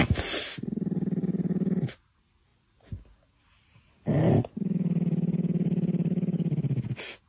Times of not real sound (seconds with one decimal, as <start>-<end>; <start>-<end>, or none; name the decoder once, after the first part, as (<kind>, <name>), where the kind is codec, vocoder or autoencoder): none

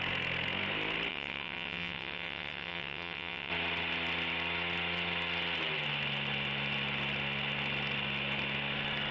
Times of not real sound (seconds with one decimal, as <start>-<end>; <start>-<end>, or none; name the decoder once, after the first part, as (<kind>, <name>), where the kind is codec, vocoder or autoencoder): 1.1-3.5 (vocoder, WaveNeXt)

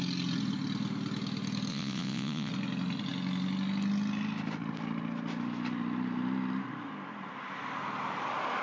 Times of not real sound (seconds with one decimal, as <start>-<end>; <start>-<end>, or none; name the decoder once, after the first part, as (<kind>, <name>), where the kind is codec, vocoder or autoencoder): 1.7-2.5 (vocoder, WaveNeXt)

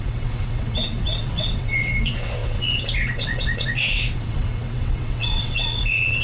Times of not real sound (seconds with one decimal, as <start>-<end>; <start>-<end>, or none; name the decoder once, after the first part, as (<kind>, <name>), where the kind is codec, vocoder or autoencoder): 0.0-6.2 (vocoder, WaveNeXt)